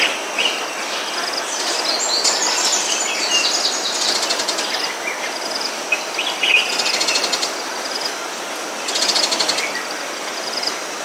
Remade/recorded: recorded